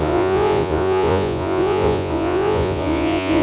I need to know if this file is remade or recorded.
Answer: remade